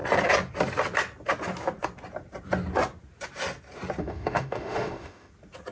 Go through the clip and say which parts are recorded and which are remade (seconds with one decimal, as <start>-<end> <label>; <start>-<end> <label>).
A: 0.0-4.0 recorded; 4.0-5.3 remade; 5.3-5.7 recorded